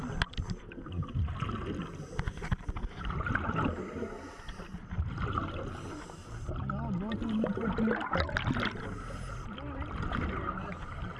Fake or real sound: real